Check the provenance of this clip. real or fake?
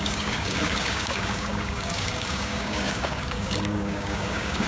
fake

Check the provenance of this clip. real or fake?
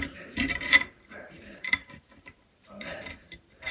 fake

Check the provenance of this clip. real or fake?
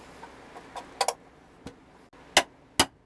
real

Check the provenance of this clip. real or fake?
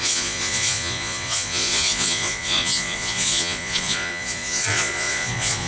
fake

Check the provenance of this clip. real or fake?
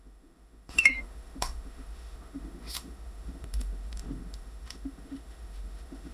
fake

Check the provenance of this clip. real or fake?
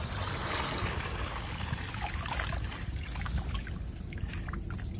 real